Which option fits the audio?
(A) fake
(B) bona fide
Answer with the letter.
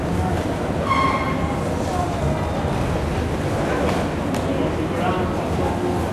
B